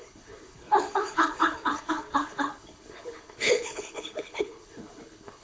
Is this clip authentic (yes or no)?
no